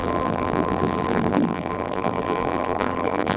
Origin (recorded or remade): remade